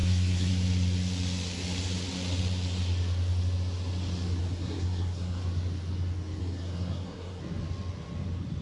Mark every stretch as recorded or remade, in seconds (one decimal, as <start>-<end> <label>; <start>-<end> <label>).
0.0-0.5 remade; 0.5-4.4 recorded; 4.4-5.4 remade; 5.4-6.4 recorded; 6.4-7.4 remade; 7.4-8.6 recorded